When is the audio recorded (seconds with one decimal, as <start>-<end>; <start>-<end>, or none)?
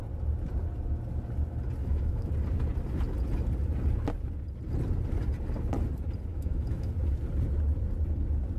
0.0-1.8; 2.3-6.3; 6.9-8.6